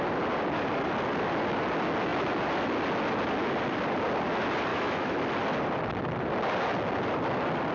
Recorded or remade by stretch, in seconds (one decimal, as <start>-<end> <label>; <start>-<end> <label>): 0.0-4.7 recorded; 4.7-5.2 remade; 5.2-7.7 recorded

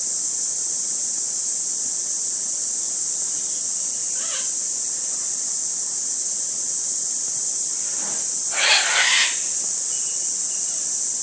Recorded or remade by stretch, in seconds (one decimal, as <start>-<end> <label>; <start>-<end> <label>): 0.0-11.2 recorded

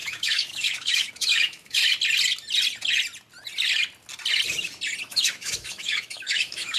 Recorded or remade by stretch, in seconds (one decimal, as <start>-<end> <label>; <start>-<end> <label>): 0.0-1.8 remade; 1.8-5.0 recorded; 5.0-6.8 remade

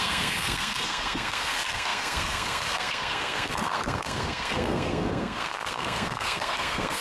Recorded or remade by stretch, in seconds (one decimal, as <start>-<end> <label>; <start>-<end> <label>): 0.0-7.0 remade

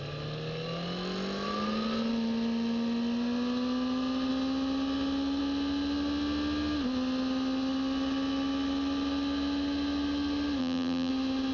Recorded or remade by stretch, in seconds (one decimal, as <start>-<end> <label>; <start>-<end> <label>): 0.0-10.6 recorded; 10.6-11.1 remade; 11.1-11.5 recorded

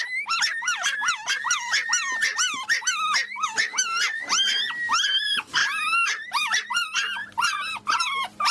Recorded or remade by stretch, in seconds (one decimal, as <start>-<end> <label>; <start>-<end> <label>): 0.0-8.5 recorded

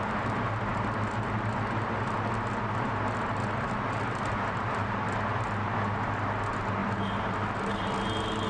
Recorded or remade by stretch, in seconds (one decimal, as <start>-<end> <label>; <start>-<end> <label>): 0.0-8.5 recorded